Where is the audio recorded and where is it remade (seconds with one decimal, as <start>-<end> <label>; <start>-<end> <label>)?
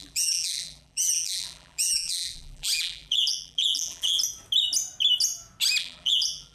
0.0-4.2 remade; 4.2-5.8 recorded; 5.8-6.5 remade